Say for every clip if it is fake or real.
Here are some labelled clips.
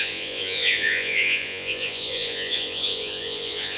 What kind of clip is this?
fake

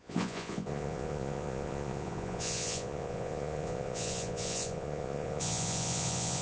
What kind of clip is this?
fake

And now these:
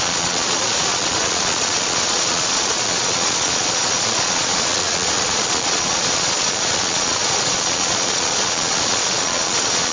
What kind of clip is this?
fake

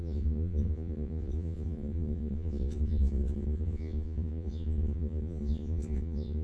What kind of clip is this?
fake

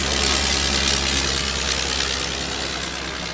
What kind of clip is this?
real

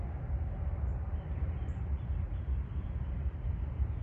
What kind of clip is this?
real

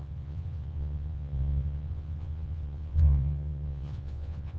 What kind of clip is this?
fake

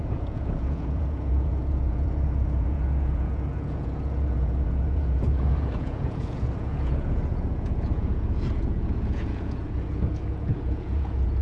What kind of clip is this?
fake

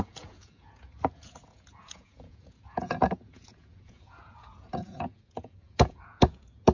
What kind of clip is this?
fake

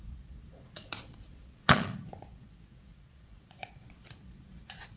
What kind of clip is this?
fake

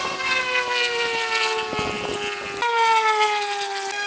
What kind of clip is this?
real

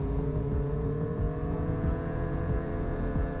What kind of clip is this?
fake